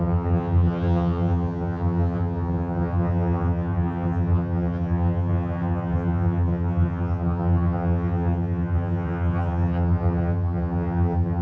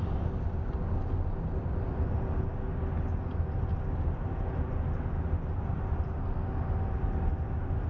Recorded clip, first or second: second